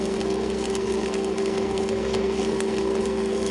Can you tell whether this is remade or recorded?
remade